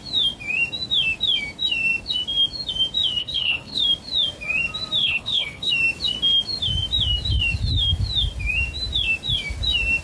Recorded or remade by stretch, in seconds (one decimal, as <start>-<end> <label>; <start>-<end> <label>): 0.0-3.2 recorded; 3.2-3.8 remade; 3.8-5.0 recorded; 5.0-5.7 remade; 5.7-10.0 recorded